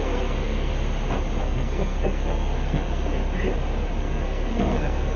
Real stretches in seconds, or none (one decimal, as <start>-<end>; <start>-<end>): 0.7-1.4; 3.2-4.0